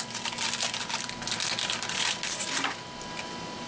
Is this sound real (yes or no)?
yes